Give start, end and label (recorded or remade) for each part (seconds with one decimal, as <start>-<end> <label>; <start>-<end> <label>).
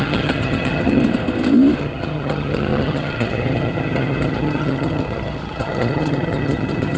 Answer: 0.0-1.0 remade; 1.0-1.8 recorded; 1.8-7.0 remade